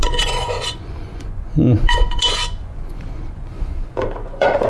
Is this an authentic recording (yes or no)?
no